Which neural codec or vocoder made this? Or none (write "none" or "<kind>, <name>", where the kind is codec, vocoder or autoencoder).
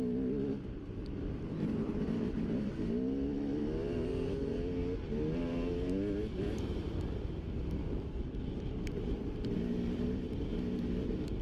none